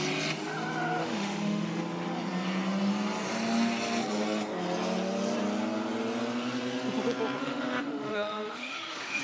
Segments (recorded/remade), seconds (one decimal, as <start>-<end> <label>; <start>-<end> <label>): 0.0-1.0 recorded; 1.0-1.8 remade; 1.8-7.4 recorded; 7.4-9.2 remade